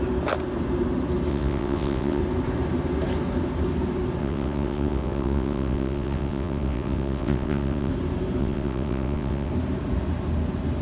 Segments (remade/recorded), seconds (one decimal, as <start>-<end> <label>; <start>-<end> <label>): 0.0-1.3 recorded; 1.3-2.2 remade; 2.2-4.2 recorded; 4.2-7.9 remade; 7.9-8.4 recorded; 8.4-9.5 remade; 9.5-10.8 recorded

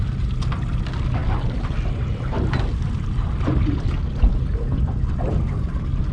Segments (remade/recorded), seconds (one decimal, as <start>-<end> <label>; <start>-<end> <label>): 0.0-6.1 recorded